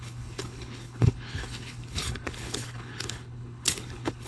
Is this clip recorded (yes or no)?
no